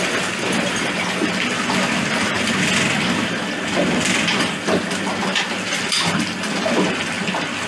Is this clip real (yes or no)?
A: yes